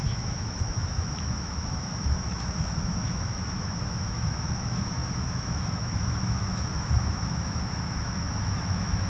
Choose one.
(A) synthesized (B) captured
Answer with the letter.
A